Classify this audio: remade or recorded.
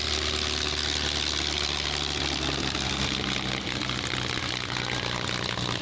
recorded